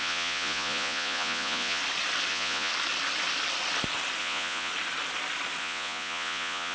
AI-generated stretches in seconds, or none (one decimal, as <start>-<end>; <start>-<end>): 0.0-1.8; 2.3-2.7; 4.2-4.7; 5.6-6.7